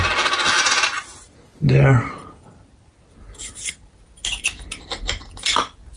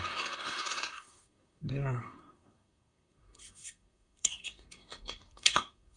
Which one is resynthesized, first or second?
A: second